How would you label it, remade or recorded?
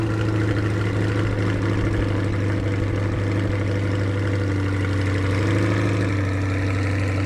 recorded